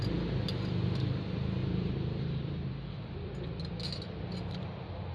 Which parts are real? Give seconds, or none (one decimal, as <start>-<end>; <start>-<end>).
0.0-1.6; 2.7-5.1